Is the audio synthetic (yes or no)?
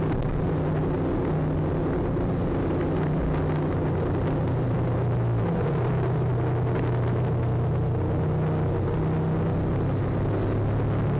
no